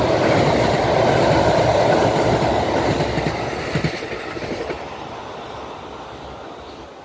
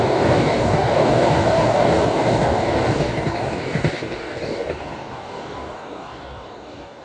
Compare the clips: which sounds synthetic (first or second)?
second